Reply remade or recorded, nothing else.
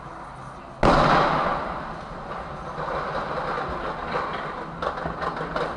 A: recorded